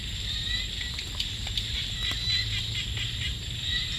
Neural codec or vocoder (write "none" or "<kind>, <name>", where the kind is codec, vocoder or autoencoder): vocoder, BigVGAN v2